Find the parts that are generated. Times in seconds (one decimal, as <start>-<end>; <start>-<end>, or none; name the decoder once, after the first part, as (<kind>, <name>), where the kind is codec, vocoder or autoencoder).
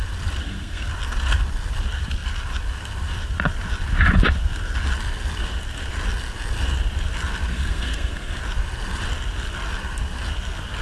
0.4-0.9 (codec, SNAC); 7.5-8.4